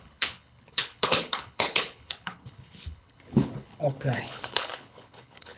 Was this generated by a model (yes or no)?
yes